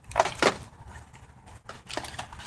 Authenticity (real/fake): real